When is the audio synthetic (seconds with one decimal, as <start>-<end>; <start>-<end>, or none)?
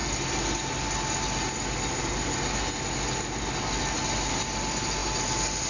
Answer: none